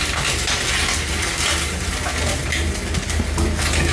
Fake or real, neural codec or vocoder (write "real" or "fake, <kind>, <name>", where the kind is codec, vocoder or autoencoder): real